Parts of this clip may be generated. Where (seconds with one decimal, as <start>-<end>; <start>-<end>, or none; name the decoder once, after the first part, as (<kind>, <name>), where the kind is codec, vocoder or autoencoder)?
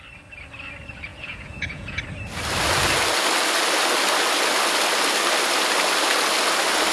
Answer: 1.1-2.0 (vocoder, Vocos)